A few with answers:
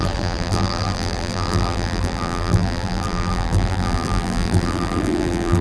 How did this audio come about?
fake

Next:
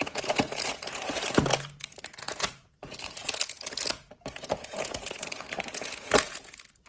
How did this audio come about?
fake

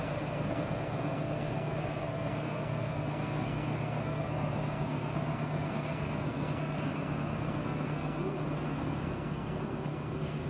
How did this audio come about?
fake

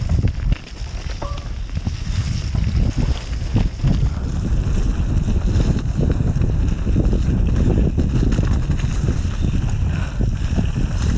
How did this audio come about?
real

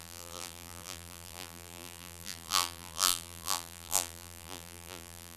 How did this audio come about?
fake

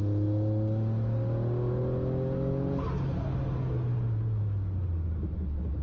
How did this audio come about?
real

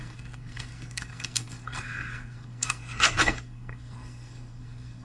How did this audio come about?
fake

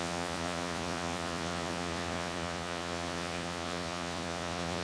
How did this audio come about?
fake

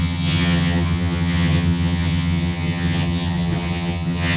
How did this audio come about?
fake